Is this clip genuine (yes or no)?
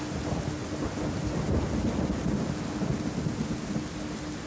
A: yes